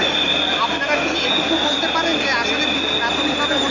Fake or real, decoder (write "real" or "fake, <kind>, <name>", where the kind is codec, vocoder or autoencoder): real